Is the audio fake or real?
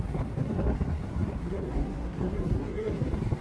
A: fake